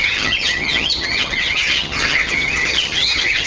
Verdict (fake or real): fake